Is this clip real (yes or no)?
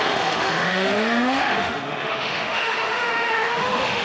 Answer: no